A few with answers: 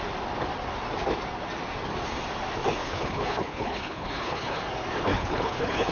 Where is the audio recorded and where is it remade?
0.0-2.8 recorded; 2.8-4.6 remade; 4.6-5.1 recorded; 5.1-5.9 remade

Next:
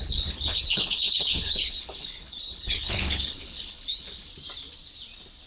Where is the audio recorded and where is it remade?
0.0-4.3 remade; 4.3-5.5 recorded

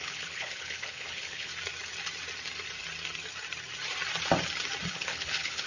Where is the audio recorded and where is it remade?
0.0-1.5 remade; 1.5-4.9 recorded; 4.9-5.7 remade

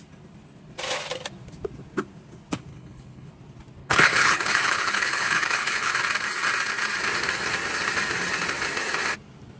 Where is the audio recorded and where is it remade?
0.0-2.7 recorded; 2.7-3.3 remade; 3.3-3.8 recorded; 3.8-5.9 remade; 5.9-9.6 recorded

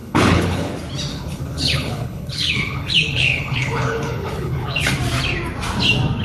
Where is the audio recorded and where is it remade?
0.0-0.7 remade; 0.7-1.1 recorded; 1.1-4.8 remade; 4.8-6.2 recorded

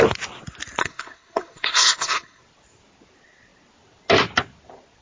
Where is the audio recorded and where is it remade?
0.0-0.8 recorded; 0.8-2.4 remade; 2.4-5.0 recorded

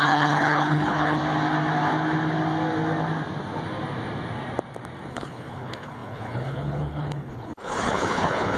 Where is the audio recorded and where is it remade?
0.0-1.2 remade; 1.2-5.1 recorded; 5.1-8.6 remade

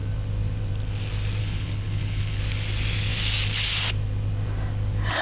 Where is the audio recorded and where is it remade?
0.0-1.4 recorded; 1.4-2.4 remade; 2.4-5.2 recorded